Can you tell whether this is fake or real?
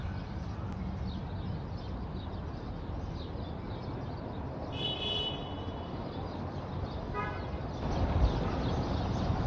real